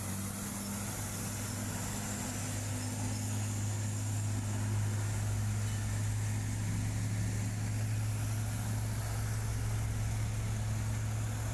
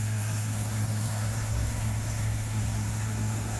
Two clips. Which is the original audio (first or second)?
first